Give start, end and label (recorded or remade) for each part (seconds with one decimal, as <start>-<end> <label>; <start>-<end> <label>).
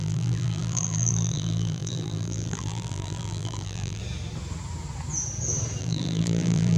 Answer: 0.0-4.0 remade; 4.0-5.8 recorded; 5.8-6.8 remade